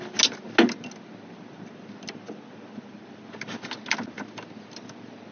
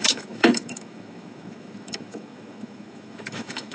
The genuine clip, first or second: first